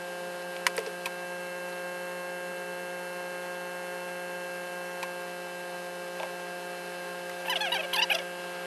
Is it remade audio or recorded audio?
recorded